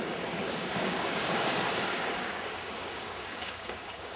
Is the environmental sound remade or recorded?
remade